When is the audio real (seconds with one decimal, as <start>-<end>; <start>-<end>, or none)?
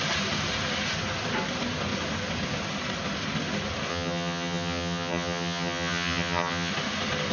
0.0-3.9; 6.7-7.3